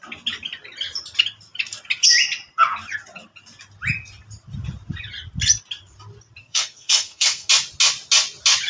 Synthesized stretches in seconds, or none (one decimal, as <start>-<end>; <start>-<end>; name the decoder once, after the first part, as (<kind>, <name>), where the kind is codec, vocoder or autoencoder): 6.4-7.5 (codec, SNAC)